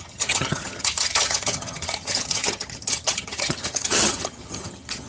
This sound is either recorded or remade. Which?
remade